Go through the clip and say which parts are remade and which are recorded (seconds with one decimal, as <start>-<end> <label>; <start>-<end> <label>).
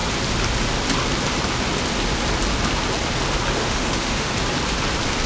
0.0-3.6 recorded; 3.6-4.3 remade; 4.3-5.3 recorded